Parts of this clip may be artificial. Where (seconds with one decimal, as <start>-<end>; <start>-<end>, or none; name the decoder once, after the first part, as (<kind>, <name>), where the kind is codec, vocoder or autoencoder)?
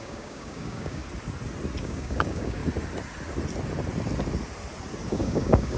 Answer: 0.0-1.0 (codec, DAC); 1.8-2.6; 5.1-5.8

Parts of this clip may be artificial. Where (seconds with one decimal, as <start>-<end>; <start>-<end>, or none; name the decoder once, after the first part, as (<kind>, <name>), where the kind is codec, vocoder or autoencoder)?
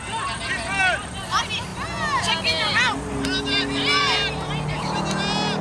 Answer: none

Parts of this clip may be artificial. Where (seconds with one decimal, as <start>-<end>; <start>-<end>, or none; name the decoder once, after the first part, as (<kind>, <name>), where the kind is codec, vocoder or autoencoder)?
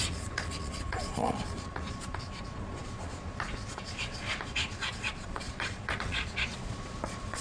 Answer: 0.0-7.4 (vocoder, Vocos)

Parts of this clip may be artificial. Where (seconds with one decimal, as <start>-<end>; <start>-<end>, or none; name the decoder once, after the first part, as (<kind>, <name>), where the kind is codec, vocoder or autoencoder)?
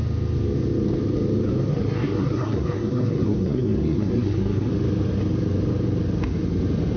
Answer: 1.7-4.7 (codec, SNAC)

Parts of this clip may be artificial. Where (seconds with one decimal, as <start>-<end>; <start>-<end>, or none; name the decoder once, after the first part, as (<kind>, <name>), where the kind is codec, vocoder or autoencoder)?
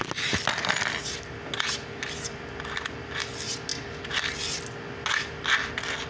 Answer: none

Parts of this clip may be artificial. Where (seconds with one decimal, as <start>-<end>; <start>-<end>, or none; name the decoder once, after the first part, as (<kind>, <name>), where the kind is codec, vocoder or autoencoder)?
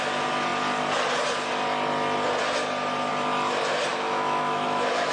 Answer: 3.9-5.1 (autoencoder, DAC-VAE)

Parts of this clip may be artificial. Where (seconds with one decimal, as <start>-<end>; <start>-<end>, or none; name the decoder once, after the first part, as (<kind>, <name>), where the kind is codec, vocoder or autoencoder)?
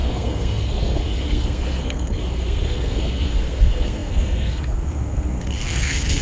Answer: 0.0-6.2 (codec, SNAC)